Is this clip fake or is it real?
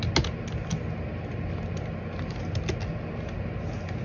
real